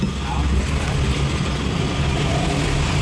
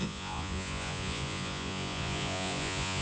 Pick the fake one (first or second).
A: second